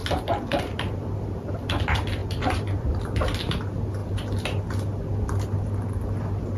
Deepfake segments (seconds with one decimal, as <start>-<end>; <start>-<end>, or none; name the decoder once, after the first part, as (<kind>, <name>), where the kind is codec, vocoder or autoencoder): 0.0-1.5 (vocoder, BigVGAN v2); 2.2-3.0